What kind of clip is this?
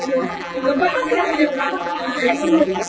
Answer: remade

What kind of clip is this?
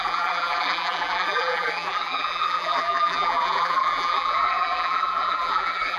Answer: remade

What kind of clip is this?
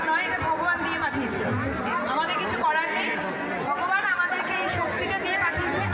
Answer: recorded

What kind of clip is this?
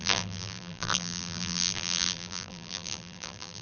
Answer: remade